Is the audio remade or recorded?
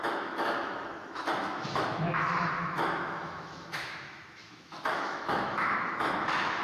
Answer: remade